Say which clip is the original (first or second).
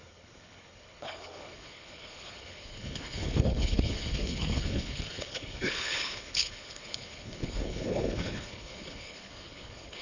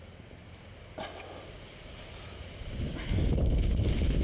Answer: second